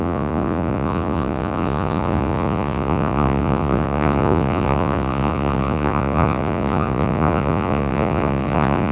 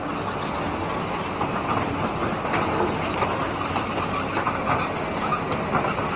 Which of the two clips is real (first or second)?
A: second